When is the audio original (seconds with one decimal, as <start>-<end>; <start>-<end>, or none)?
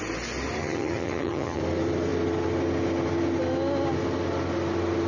0.0-0.6; 1.6-5.1